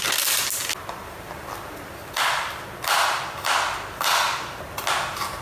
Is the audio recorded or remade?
recorded